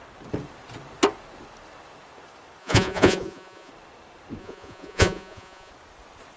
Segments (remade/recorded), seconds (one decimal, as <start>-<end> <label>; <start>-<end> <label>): 0.0-2.6 recorded; 2.6-3.7 remade; 3.7-4.4 recorded; 4.4-5.7 remade; 5.7-6.4 recorded